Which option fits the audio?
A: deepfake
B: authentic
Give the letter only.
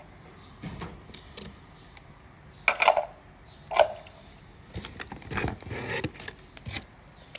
B